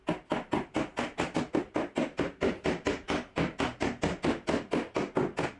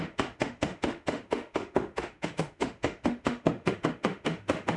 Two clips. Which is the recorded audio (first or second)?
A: first